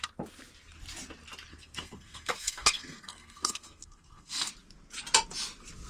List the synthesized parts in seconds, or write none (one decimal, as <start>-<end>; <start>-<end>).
1.5-4.5